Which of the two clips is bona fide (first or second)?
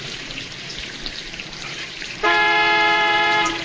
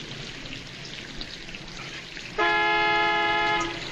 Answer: second